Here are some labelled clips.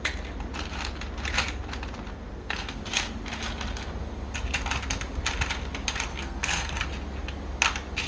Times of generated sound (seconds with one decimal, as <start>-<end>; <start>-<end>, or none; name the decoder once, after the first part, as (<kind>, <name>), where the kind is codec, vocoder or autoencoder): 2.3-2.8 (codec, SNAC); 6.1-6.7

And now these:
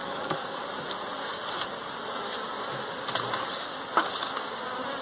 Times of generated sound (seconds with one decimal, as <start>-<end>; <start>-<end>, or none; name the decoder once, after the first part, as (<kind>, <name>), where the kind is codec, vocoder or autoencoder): 0.0-0.7 (codec, DAC)

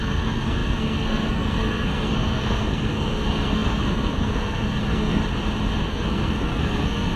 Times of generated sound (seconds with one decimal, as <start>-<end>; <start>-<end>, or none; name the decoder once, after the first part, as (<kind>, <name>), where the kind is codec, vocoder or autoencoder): 0.0-5.2 (codec, SNAC); 5.9-7.2

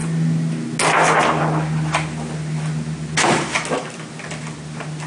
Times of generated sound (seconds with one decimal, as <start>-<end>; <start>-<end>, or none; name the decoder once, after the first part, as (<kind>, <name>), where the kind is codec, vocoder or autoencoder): none

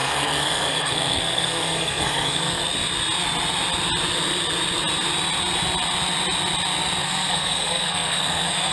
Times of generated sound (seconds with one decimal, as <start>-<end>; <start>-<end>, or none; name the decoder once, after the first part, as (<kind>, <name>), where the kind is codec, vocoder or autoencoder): 0.0-2.6 (codec, SNAC); 7.0-8.7

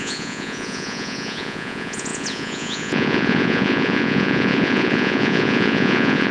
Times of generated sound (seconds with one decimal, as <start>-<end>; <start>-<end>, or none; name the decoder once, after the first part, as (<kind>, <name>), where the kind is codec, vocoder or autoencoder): 0.0-6.3 (vocoder, Vocos)

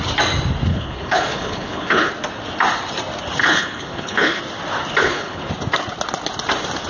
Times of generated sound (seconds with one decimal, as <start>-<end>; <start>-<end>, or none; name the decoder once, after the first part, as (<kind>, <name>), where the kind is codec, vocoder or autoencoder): 0.7-2.1 (codec, HILCodec); 3.4-4.4; 5.0-5.5